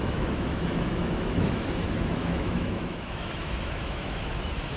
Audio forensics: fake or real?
fake